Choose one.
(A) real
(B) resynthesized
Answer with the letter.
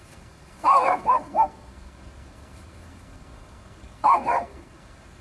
B